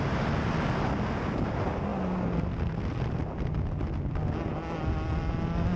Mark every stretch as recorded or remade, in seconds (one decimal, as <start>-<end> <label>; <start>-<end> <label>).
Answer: 0.0-5.8 recorded